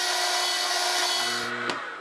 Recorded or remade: recorded